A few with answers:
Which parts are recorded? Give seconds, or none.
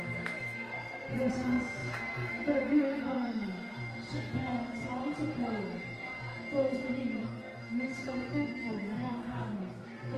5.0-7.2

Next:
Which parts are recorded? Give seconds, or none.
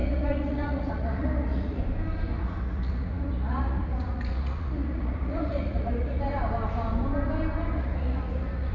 1.8-2.3; 6.2-7.7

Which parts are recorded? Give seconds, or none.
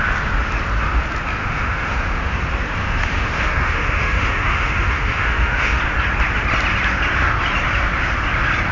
0.0-1.4; 2.4-2.8; 5.8-8.7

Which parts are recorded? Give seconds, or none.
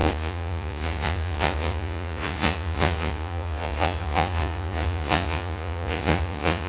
none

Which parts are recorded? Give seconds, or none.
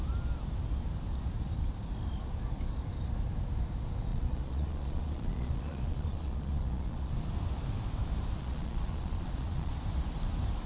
0.0-4.1; 7.1-8.4; 9.7-10.7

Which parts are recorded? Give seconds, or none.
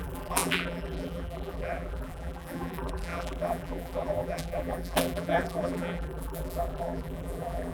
none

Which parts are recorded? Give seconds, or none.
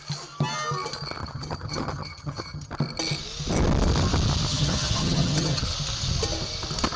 0.0-1.2; 2.7-4.5; 5.6-7.0